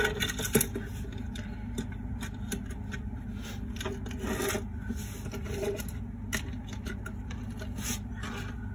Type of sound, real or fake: real